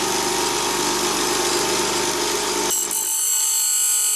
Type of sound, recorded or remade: recorded